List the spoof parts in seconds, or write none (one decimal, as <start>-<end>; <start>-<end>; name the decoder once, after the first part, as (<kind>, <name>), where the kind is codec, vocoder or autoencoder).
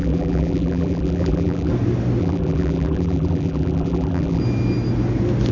0.0-1.7 (vocoder, BigVGAN v2); 2.2-4.4